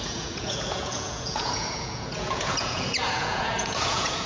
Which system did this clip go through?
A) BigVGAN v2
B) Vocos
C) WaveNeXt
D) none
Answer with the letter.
B